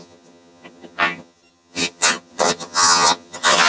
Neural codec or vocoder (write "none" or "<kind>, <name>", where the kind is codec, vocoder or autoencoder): vocoder, HiFi-GAN